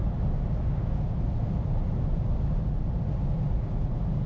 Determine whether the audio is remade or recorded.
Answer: recorded